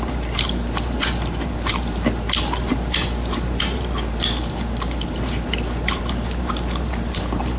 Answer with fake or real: fake